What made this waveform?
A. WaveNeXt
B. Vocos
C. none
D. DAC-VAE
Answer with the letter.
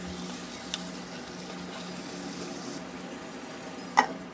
C